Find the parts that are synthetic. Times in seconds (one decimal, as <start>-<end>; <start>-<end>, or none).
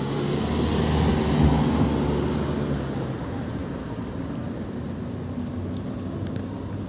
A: none